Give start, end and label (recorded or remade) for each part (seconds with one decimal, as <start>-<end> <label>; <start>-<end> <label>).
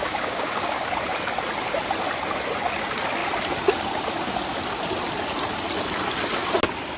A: 0.0-0.9 remade; 0.9-7.0 recorded